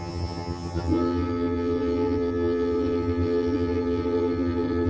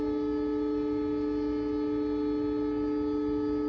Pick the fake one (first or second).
first